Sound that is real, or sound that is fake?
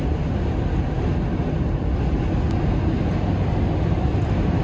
real